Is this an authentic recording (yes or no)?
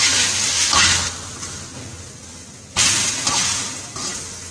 yes